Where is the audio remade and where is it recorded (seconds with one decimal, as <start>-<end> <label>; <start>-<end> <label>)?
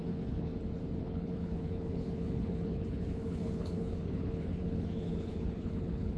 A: 0.0-0.5 remade; 0.5-1.0 recorded; 1.0-6.2 remade